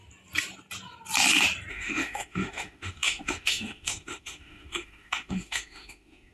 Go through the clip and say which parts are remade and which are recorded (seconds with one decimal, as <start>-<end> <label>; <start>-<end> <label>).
0.0-1.7 recorded; 1.7-6.3 remade